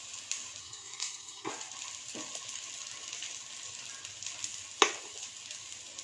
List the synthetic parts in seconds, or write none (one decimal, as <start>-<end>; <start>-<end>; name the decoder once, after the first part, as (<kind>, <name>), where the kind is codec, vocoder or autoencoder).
0.6-1.5 (codec, SNAC)